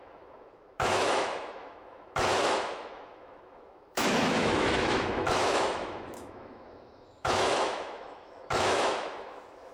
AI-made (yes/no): yes